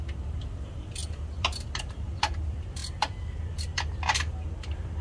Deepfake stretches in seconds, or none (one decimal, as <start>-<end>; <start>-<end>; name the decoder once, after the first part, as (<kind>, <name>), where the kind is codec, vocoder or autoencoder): 0.0-5.0 (vocoder, BigVGAN v2)